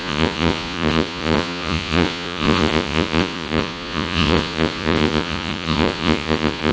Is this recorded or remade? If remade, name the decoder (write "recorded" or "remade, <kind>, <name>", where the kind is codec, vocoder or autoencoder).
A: remade, vocoder, Vocos